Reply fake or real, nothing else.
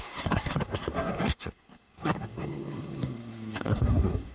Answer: fake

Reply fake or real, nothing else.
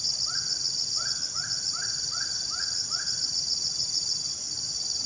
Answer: real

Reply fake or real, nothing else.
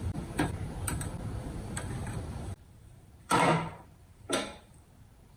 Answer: fake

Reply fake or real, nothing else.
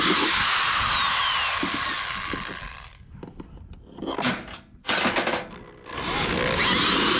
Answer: real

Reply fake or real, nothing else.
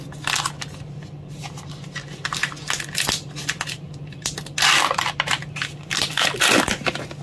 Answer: real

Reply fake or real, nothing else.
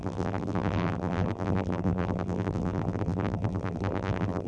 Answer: fake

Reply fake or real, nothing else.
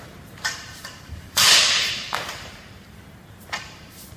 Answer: fake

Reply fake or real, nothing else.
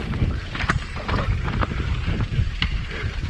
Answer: fake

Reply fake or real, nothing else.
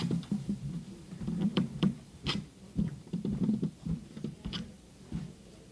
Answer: fake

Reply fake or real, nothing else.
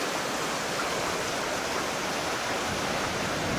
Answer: real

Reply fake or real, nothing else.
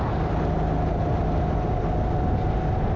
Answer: real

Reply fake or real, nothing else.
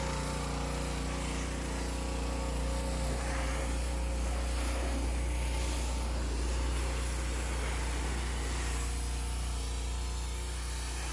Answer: real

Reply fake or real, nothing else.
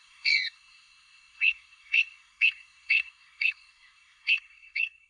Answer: fake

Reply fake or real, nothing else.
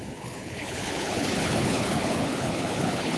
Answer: fake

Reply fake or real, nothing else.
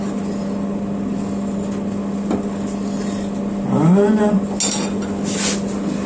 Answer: real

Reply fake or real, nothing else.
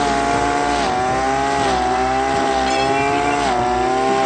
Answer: real